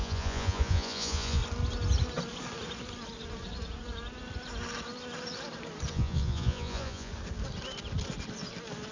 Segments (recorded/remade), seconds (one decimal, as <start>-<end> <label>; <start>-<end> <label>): 0.0-1.4 remade; 1.4-5.9 recorded; 5.9-7.1 remade; 7.1-8.9 recorded

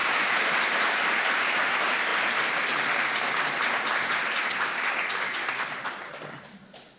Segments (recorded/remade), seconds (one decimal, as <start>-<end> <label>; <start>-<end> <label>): 0.0-1.0 remade; 1.0-7.0 recorded

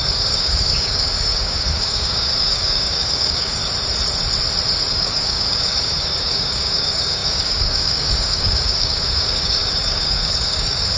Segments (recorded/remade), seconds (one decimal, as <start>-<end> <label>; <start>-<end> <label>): 0.0-3.6 remade; 3.6-4.9 recorded; 4.9-11.0 remade

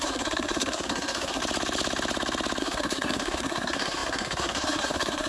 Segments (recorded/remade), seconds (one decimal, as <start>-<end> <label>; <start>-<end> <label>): 0.0-1.4 remade; 1.4-2.6 recorded; 2.6-5.3 remade

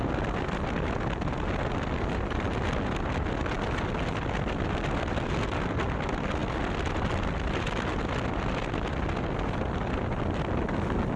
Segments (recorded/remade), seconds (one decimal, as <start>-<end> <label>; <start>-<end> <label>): 0.0-11.2 recorded

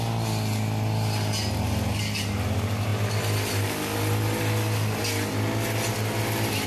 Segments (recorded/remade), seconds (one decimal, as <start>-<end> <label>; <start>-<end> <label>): 0.0-6.7 recorded

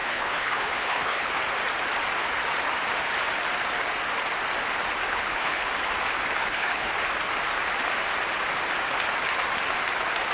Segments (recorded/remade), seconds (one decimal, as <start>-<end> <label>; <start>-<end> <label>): 0.0-1.3 remade; 1.3-5.1 recorded; 5.1-5.7 remade; 5.7-6.4 recorded; 6.4-6.9 remade; 6.9-10.3 recorded